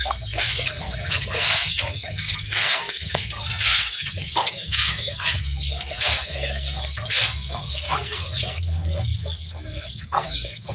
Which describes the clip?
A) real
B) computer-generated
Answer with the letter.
B